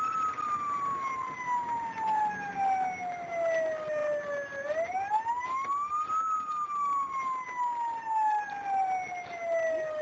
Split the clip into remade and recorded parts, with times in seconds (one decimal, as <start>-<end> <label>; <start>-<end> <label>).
0.0-10.0 recorded